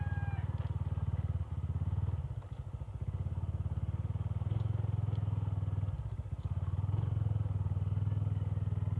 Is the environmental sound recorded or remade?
recorded